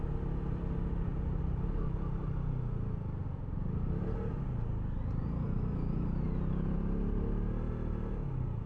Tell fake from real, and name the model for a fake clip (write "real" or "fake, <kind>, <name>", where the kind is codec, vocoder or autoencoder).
real